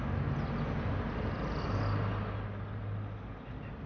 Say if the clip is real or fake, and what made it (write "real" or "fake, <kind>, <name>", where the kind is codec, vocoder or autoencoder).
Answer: real